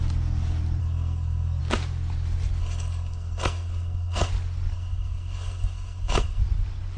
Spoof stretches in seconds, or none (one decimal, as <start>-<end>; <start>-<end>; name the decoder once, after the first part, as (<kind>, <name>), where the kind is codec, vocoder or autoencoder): 0.8-1.6 (codec, SNAC); 2.6-4.3; 4.7-6.4